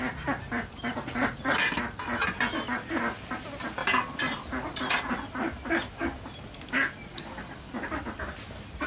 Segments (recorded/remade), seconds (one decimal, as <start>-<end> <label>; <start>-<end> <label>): 0.0-7.1 recorded; 7.1-7.7 remade; 7.7-8.9 recorded